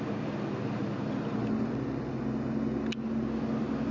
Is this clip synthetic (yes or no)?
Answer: no